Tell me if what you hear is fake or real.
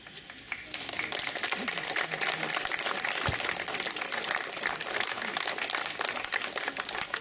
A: real